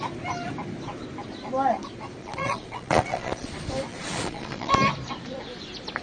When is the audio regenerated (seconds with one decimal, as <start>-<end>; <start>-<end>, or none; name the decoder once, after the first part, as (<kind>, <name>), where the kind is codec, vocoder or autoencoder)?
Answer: 2.2-3.5 (vocoder, Vocos); 3.9-4.7